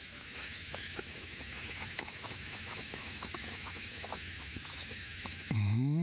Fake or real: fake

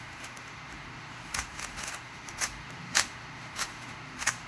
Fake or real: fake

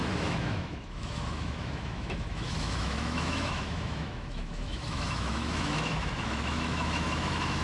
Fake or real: fake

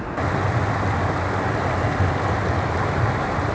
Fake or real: real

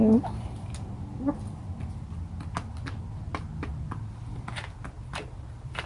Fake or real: real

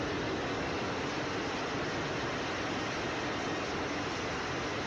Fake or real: real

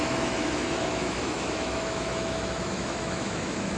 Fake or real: fake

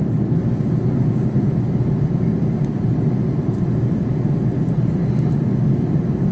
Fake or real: real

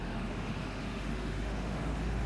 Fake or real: fake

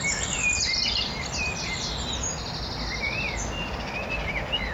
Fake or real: real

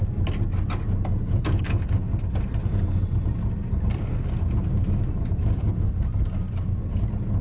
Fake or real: real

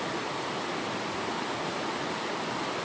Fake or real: real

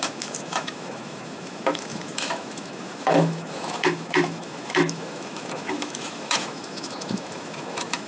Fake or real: fake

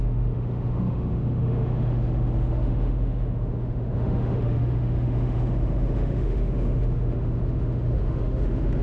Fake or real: fake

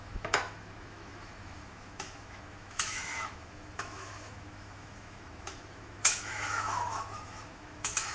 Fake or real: fake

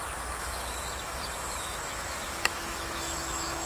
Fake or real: fake